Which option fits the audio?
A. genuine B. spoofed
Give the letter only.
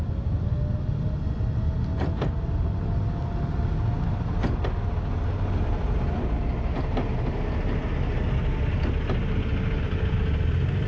A